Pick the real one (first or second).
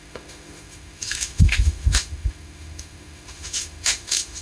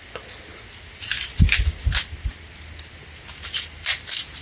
second